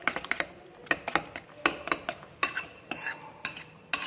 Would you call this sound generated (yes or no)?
no